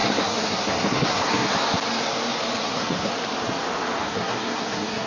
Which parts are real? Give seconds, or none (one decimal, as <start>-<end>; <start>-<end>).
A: 1.5-2.6; 3.1-4.0